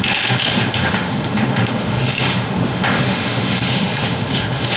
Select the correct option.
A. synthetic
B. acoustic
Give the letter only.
A